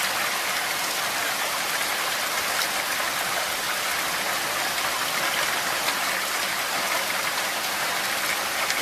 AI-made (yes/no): no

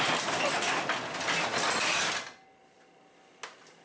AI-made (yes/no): no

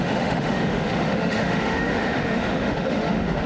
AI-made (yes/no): yes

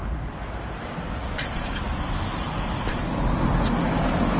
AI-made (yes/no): no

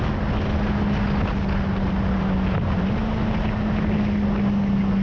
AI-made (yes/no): no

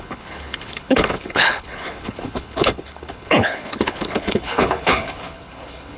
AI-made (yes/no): yes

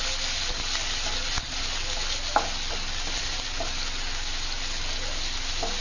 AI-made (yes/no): no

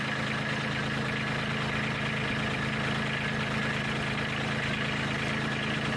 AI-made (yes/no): no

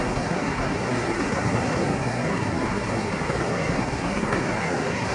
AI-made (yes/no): yes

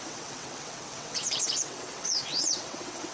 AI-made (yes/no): yes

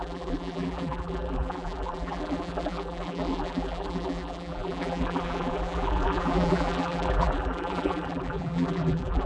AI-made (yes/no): yes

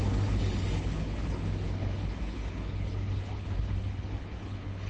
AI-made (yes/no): yes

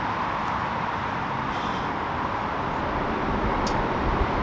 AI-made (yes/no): no